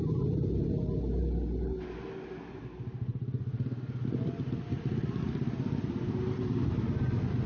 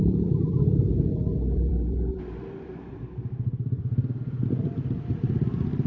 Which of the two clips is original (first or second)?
first